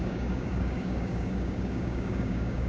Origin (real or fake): fake